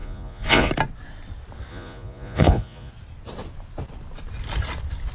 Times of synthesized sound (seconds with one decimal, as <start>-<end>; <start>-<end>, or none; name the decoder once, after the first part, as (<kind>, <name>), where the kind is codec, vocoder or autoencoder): 0.0-0.7 (vocoder, Vocos); 1.7-2.9